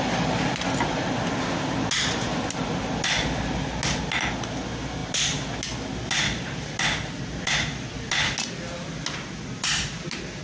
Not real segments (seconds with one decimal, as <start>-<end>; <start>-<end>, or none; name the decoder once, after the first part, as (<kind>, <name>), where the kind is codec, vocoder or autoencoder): none